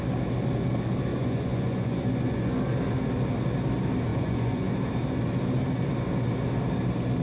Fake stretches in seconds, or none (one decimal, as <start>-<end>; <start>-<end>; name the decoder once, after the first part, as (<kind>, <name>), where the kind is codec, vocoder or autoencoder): 1.1-2.6 (vocoder, Vocos); 4.1-4.7